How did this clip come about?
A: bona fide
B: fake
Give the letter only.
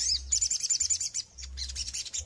B